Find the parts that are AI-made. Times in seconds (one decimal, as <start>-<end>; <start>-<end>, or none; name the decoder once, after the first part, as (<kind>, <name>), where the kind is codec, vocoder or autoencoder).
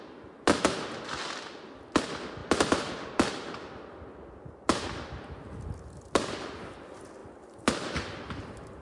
none